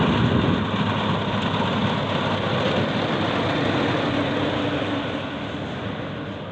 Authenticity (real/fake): real